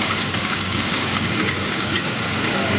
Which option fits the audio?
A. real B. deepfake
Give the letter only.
B